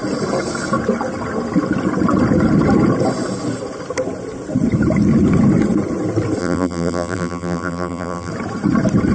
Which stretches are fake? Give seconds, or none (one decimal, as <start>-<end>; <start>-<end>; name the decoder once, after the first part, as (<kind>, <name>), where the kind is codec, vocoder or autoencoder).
6.4-8.3 (vocoder, BigVGAN v2)